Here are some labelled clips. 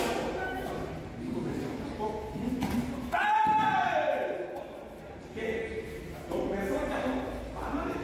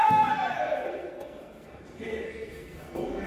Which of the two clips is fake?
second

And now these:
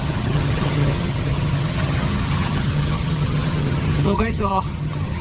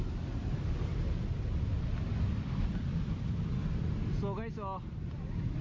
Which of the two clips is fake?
first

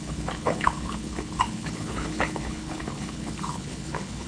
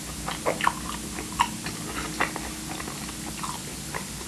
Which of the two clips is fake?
first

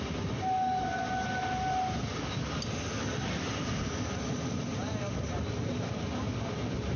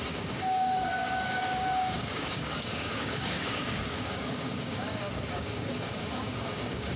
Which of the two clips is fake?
second